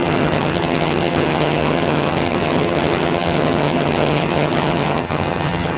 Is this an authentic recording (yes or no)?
no